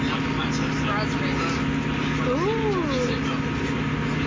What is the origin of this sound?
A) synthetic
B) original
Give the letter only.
B